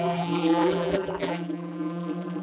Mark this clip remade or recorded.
remade